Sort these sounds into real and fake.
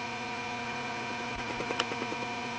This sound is fake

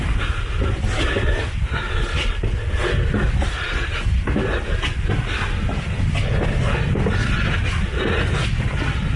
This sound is real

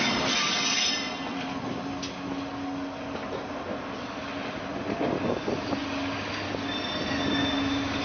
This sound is real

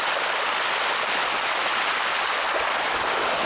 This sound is real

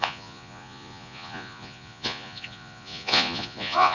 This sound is fake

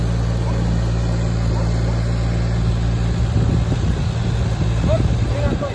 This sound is real